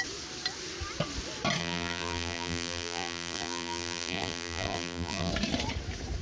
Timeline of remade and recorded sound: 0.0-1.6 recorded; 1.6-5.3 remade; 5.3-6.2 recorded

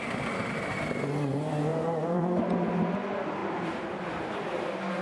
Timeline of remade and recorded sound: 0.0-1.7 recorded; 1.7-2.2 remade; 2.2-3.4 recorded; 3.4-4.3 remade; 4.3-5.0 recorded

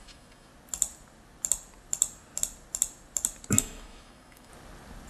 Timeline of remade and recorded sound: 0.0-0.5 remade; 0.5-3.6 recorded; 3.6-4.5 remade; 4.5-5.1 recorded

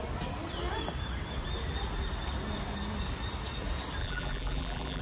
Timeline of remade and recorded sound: 0.0-4.0 recorded; 4.0-5.0 remade

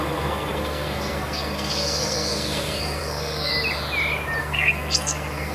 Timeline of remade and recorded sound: 0.0-3.5 remade; 3.5-4.4 recorded; 4.4-5.5 remade

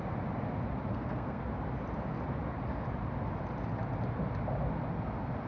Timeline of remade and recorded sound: 0.0-0.9 recorded; 0.9-1.4 remade; 1.4-5.5 recorded

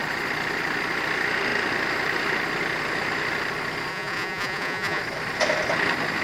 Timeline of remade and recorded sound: 0.0-3.9 recorded; 3.9-5.0 remade; 5.0-6.2 recorded

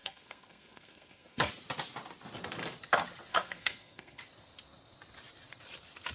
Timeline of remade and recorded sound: 0.0-1.5 remade; 1.5-3.3 recorded; 3.3-4.2 remade; 4.2-6.1 recorded